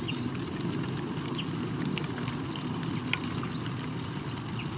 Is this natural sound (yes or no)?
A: yes